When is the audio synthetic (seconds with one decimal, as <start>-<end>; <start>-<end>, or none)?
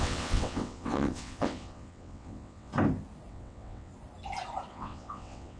0.0-2.7; 3.3-3.9; 4.7-5.6